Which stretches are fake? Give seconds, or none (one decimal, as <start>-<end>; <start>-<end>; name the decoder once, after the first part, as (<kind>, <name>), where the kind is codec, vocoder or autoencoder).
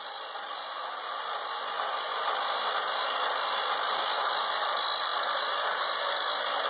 5.1-5.8 (vocoder, BigVGAN v2)